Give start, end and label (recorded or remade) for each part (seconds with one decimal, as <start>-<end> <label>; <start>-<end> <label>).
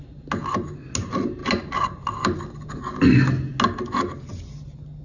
0.0-5.0 recorded